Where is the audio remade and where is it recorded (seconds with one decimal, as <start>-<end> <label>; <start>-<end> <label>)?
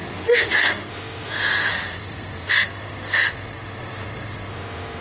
0.0-0.9 remade; 0.9-1.7 recorded; 1.7-4.5 remade; 4.5-5.0 recorded